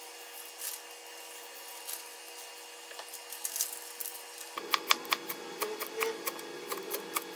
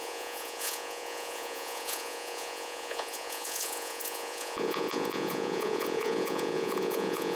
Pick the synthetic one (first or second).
second